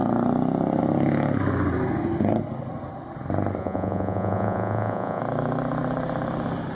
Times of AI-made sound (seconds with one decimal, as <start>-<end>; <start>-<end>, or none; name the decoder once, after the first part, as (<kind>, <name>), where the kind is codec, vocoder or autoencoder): 3.6-5.2 (vocoder, Vocos)